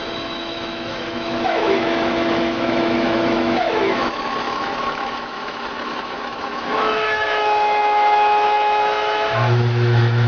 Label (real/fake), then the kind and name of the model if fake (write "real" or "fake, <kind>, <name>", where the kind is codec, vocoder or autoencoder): fake, autoencoder, DAC-VAE